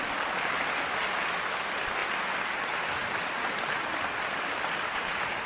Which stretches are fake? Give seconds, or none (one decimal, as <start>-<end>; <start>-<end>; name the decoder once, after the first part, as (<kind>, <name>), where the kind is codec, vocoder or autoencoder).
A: none